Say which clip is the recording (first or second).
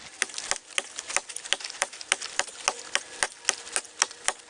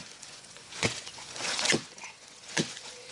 first